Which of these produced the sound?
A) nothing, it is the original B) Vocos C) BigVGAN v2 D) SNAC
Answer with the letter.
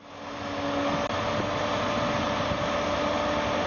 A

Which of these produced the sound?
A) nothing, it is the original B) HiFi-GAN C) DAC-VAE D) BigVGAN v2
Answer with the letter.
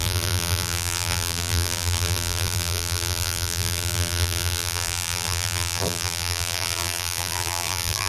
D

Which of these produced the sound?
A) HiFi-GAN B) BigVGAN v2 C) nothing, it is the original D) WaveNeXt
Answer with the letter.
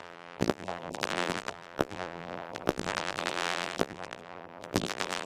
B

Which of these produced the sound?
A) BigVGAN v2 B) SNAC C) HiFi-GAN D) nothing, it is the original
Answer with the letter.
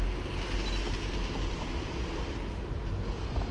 D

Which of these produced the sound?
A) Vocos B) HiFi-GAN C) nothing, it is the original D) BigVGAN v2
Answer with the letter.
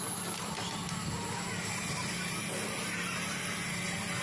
C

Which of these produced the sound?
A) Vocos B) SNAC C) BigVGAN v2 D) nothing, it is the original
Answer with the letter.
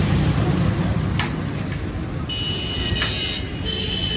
D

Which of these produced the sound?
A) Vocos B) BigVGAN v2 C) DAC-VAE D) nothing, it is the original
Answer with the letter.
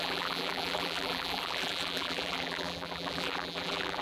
B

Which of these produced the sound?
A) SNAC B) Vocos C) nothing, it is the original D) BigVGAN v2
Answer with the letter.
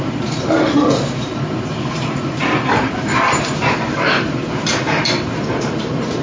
D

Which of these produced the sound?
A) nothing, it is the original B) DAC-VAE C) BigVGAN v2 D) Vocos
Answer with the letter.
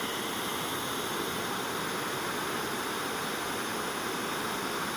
A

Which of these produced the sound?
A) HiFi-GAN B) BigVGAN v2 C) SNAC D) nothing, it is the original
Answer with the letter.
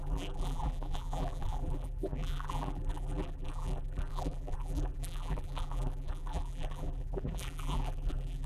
B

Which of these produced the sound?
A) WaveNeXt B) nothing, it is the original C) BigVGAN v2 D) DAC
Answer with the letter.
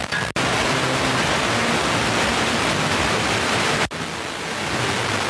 B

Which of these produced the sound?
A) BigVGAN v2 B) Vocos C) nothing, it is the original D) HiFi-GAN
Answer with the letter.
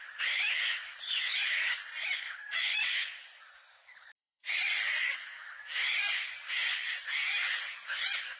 C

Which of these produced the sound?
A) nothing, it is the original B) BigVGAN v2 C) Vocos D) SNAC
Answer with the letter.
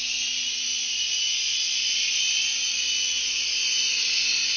A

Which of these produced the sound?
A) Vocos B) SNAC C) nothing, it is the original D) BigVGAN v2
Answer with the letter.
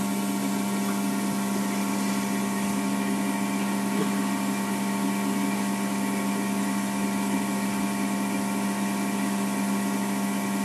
C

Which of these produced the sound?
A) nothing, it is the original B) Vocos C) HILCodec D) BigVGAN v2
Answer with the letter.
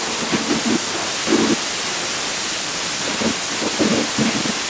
A